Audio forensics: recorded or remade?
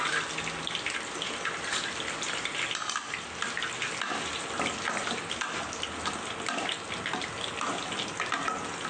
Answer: recorded